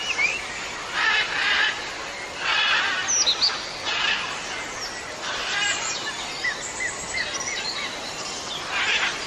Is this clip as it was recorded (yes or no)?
yes